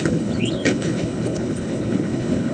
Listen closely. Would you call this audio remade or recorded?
remade